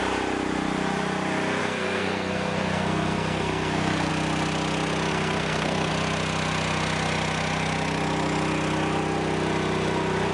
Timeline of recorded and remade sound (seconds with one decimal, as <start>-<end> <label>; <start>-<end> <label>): 0.0-1.6 recorded; 1.6-4.1 remade; 4.1-5.1 recorded; 5.1-5.9 remade; 5.9-10.3 recorded